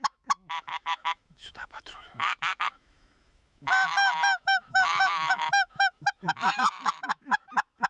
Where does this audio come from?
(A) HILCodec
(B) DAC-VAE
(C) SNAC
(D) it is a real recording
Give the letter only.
B